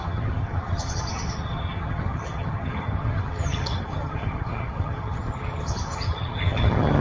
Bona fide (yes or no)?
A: no